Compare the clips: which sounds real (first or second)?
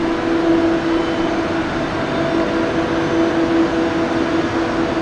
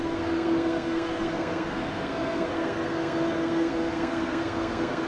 first